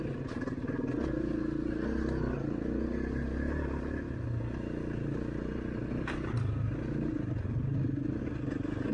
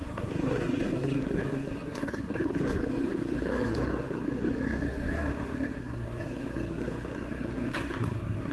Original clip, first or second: first